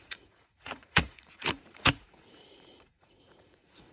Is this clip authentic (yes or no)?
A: no